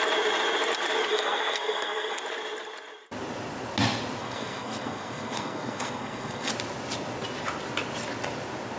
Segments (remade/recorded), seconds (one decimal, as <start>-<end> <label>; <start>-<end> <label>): 0.0-1.1 recorded; 1.1-2.2 remade; 2.2-4.2 recorded; 4.2-6.5 remade; 6.5-8.8 recorded